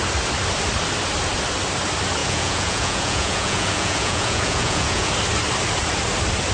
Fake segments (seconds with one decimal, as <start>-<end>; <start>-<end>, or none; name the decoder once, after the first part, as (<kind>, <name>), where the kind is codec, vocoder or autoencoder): 2.2-5.1 (vocoder, Vocos)

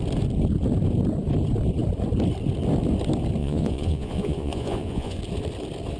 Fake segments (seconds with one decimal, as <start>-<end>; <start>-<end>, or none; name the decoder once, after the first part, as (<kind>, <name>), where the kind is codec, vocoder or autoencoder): 3.4-5.2 (vocoder, Vocos)